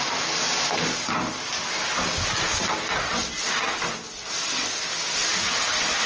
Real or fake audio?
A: real